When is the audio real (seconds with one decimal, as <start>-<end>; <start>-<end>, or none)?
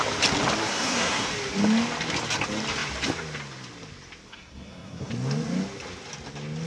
0.0-0.6; 1.3-4.3; 5.1-6.7